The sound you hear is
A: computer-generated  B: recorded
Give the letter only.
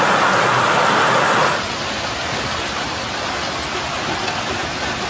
B